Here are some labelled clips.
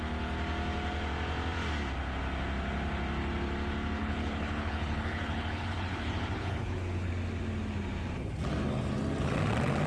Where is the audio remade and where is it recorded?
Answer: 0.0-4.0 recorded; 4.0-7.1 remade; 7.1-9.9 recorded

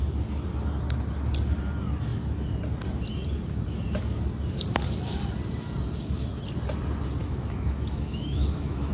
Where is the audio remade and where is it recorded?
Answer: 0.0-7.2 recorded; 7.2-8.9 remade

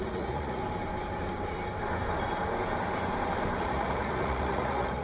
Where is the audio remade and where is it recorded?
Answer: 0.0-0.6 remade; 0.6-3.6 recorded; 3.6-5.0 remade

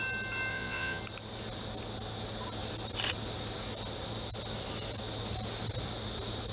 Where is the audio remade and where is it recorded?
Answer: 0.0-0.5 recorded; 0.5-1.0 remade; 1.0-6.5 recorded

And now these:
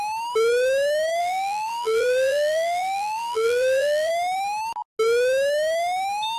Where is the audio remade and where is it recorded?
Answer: 0.0-1.2 recorded; 1.2-4.1 remade; 4.1-6.4 recorded